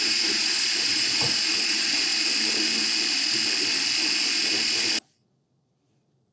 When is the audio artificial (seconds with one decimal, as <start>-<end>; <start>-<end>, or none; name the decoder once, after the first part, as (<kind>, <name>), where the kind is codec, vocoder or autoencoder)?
0.0-2.1 (vocoder, Vocos)

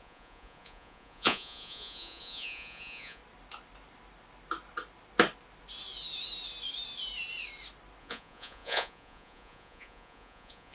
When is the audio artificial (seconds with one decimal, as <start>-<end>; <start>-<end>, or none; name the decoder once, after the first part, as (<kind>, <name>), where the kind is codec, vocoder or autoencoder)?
0.0-3.2 (vocoder, Vocos); 8.0-10.7

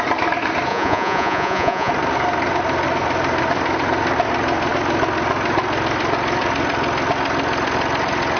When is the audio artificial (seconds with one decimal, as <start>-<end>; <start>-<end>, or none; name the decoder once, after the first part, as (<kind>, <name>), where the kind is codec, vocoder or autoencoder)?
0.7-1.9 (vocoder, Vocos)

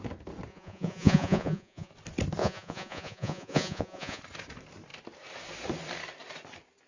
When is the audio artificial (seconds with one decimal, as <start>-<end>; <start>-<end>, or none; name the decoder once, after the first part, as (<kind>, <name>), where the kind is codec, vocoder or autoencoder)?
0.5-1.9 (vocoder, Vocos); 2.4-4.2